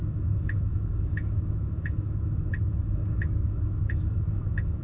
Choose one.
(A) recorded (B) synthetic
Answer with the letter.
B